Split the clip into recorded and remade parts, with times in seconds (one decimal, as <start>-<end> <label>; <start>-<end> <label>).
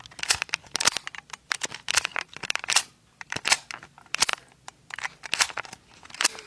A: 0.0-6.5 recorded